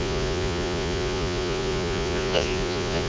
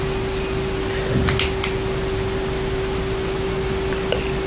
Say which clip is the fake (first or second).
first